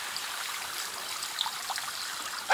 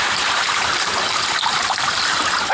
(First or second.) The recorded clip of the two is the first